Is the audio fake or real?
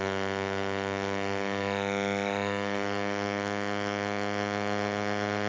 fake